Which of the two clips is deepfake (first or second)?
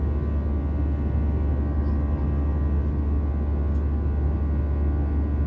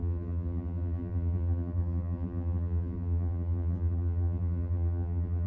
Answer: second